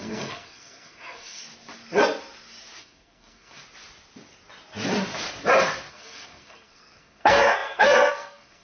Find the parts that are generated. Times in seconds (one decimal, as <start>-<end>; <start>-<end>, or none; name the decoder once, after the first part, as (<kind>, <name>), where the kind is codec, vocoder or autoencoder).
0.0-1.4 (codec, SNAC); 2.8-3.6; 5.9-8.6